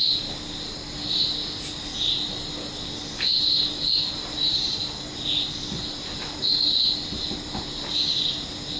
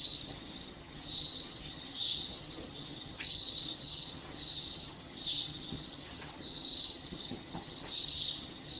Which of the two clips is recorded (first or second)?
first